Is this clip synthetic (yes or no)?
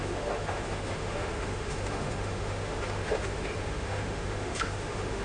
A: yes